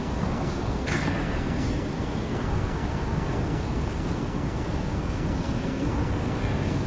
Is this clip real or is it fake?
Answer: fake